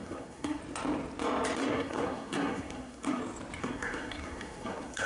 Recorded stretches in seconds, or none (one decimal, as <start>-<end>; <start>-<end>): 0.6-1.6; 3.2-3.6

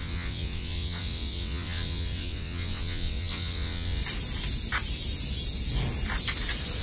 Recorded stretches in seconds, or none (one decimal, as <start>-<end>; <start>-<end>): 4.0-6.8

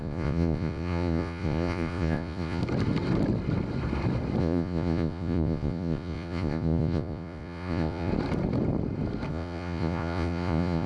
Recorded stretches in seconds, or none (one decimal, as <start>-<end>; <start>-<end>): 2.6-4.4; 8.1-9.3